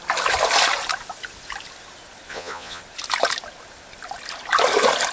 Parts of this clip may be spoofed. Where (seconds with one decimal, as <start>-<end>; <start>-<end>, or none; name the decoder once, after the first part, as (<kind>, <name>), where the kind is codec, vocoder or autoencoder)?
2.3-2.8 (vocoder, Vocos)